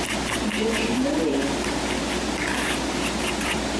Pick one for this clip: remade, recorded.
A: recorded